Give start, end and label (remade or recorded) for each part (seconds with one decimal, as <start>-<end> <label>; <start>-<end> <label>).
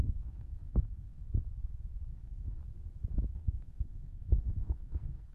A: 0.0-1.2 remade; 1.2-2.1 recorded; 2.1-2.6 remade; 2.6-3.3 recorded; 3.3-5.3 remade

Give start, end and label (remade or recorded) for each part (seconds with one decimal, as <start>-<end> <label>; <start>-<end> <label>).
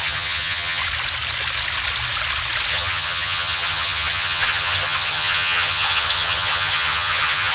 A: 0.0-0.8 remade; 0.8-2.7 recorded; 2.7-7.5 remade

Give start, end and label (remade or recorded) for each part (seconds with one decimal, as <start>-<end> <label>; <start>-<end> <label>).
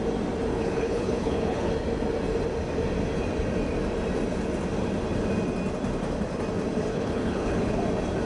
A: 0.0-0.5 recorded; 0.5-1.7 remade; 1.7-6.9 recorded; 6.9-7.8 remade; 7.8-8.3 recorded